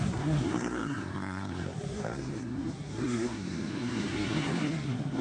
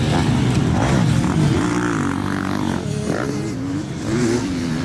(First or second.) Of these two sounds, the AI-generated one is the first